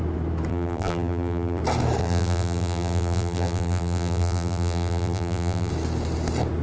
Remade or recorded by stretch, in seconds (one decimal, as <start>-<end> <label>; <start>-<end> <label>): 0.0-0.5 recorded; 0.5-1.6 remade; 1.6-2.0 recorded; 2.0-5.7 remade; 5.7-6.6 recorded